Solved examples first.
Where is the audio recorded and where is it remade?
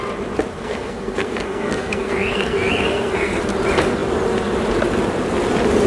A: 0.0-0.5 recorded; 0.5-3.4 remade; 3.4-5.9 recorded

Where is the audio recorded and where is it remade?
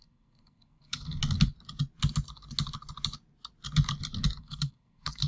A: 0.0-1.2 remade; 1.2-4.4 recorded; 4.4-5.3 remade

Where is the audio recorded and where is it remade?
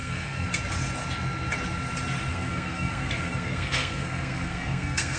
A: 0.0-0.5 remade; 0.5-2.3 recorded; 2.3-5.2 remade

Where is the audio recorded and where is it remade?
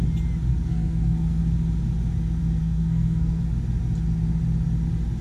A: 0.0-0.5 recorded; 0.5-1.4 remade; 1.4-2.6 recorded; 2.6-3.4 remade; 3.4-5.2 recorded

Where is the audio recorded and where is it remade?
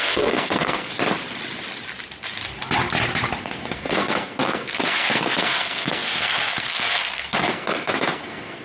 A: 0.0-1.0 remade; 1.0-3.4 recorded; 3.4-8.6 remade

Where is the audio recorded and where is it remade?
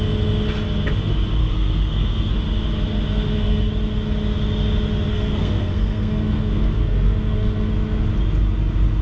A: 0.0-1.4 recorded; 1.4-2.3 remade; 2.3-3.1 recorded; 3.1-3.7 remade; 3.7-5.1 recorded; 5.1-7.7 remade; 7.7-9.0 recorded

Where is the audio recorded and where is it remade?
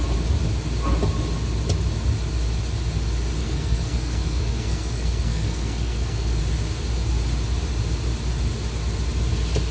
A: 0.0-3.4 recorded; 3.4-6.4 remade; 6.4-9.7 recorded